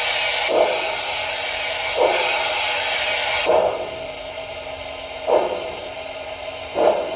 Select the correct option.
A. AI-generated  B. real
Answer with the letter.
B